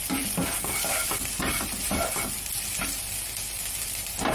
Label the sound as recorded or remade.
recorded